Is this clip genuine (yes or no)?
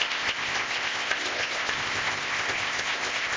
no